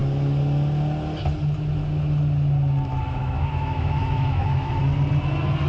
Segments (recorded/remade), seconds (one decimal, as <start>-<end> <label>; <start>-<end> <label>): 0.0-2.9 recorded; 2.9-4.8 remade; 4.8-5.7 recorded

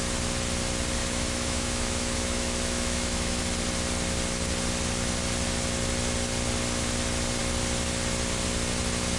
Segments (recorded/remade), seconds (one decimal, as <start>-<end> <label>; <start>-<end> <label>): 0.0-1.0 recorded; 1.0-3.4 remade; 3.4-9.2 recorded